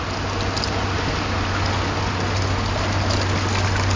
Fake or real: real